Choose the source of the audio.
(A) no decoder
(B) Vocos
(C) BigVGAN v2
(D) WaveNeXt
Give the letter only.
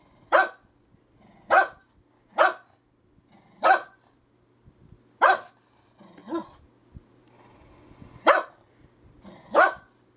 A